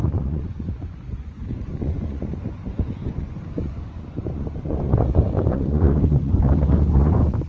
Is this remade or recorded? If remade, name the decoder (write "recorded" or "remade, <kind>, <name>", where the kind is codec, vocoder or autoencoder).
remade, vocoder, Vocos